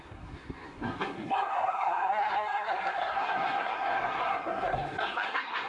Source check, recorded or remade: remade